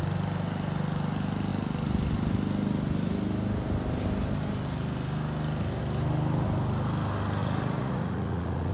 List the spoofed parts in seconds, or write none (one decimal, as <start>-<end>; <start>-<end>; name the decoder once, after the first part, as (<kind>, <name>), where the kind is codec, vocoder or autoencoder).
7.4-8.7 (vocoder, Vocos)